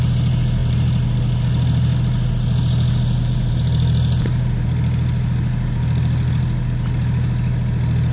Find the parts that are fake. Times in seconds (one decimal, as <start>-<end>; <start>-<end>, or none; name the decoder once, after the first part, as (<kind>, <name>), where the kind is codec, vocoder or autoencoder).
none